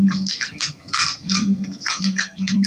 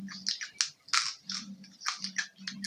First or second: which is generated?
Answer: first